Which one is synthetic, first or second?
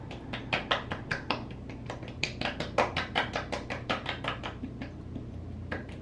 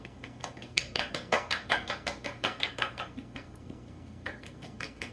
second